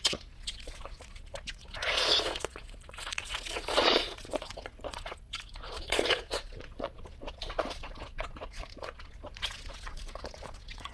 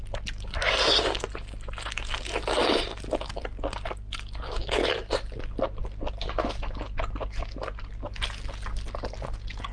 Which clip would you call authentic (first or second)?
second